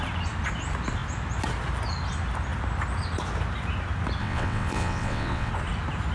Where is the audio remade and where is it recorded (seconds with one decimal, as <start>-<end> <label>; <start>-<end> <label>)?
0.0-4.2 recorded; 4.2-5.5 remade; 5.5-6.1 recorded